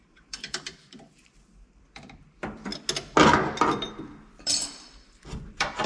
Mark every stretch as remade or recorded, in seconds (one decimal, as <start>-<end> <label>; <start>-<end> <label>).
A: 0.0-2.7 remade; 2.7-3.7 recorded; 3.7-5.9 remade